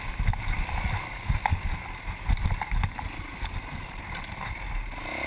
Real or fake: real